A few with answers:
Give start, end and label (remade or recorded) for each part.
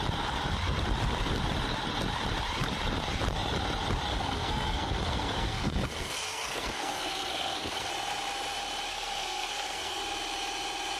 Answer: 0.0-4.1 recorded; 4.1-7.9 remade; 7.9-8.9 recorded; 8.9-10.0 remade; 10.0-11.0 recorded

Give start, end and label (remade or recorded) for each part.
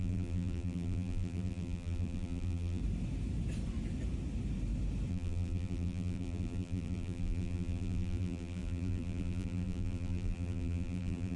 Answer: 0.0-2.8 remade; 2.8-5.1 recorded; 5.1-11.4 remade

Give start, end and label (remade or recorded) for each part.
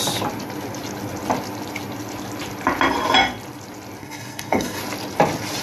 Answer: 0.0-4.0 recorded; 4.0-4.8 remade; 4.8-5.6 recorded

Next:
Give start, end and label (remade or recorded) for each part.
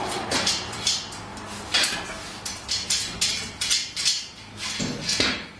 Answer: 0.0-5.6 recorded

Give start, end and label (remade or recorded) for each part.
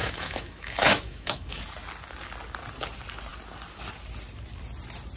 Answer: 0.0-1.6 remade; 1.6-5.2 recorded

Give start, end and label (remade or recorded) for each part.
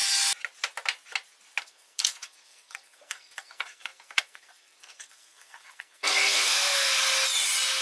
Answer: 0.0-1.6 recorded; 1.6-6.9 remade; 6.9-7.8 recorded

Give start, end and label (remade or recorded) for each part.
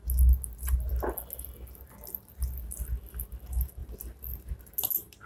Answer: 0.0-5.3 recorded